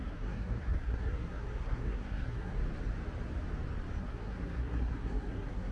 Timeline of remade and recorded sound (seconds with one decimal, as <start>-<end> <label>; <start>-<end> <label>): 0.0-2.6 remade; 2.6-4.0 recorded; 4.0-5.7 remade